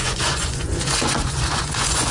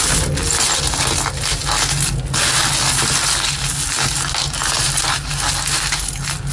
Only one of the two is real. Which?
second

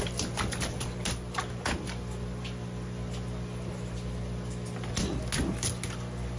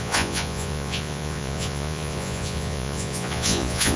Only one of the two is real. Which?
first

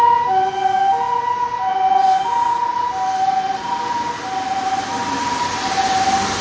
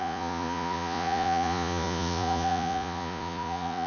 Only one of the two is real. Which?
first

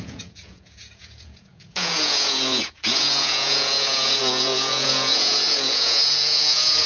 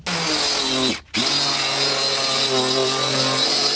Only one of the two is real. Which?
second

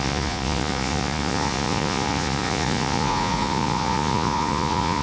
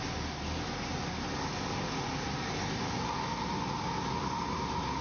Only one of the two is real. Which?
second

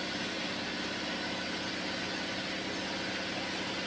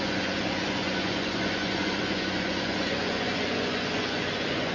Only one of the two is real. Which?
first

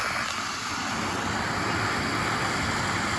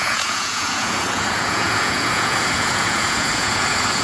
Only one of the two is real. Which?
first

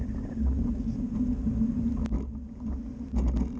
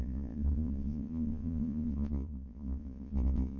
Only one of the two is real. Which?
first